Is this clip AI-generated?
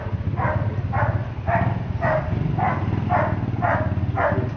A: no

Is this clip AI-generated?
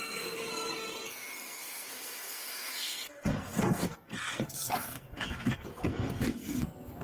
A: yes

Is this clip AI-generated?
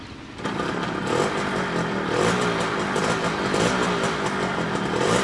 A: no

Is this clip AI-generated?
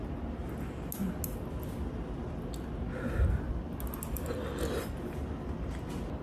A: no